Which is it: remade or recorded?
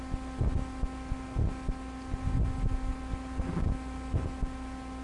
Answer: recorded